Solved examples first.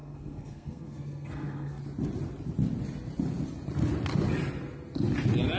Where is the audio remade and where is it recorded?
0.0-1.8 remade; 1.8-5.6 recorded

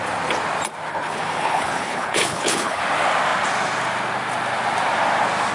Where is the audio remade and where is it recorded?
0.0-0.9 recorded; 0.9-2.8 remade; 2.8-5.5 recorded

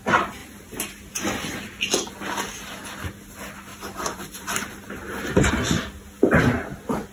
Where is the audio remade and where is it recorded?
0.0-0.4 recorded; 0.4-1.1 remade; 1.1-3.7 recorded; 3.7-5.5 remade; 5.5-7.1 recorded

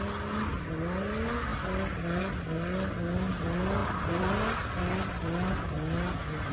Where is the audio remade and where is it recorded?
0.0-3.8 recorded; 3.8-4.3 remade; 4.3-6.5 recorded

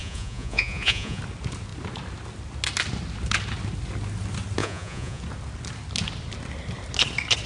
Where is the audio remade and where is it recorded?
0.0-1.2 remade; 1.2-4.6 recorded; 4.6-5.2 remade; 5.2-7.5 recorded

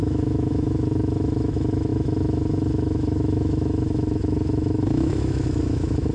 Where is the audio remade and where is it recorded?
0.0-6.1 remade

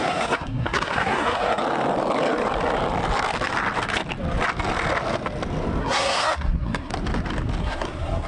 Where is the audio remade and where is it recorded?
0.0-1.6 remade; 1.6-5.8 recorded; 5.8-6.9 remade; 6.9-7.6 recorded; 7.6-8.3 remade